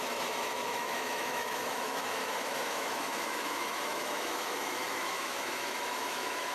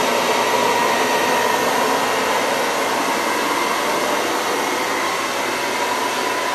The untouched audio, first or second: second